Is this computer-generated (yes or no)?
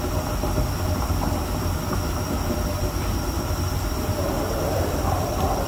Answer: yes